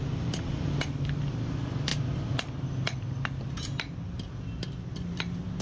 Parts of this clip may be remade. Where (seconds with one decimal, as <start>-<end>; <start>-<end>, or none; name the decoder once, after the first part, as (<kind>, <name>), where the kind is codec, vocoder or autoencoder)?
none